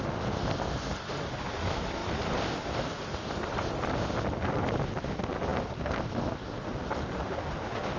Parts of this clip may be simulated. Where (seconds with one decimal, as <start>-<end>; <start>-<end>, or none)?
none